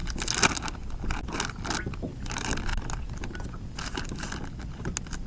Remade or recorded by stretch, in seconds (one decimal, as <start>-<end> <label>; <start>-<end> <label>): 0.0-5.3 recorded